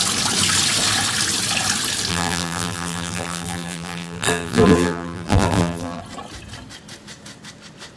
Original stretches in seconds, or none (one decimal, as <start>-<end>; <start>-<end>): 0.0-2.1; 6.0-8.0